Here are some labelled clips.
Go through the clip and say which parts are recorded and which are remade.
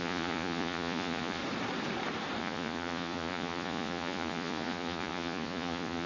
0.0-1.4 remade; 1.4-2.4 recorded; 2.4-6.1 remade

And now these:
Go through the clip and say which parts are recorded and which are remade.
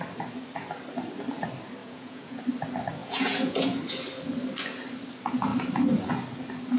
0.0-1.8 recorded; 1.8-2.4 remade; 2.4-3.0 recorded; 3.0-3.8 remade; 3.8-6.8 recorded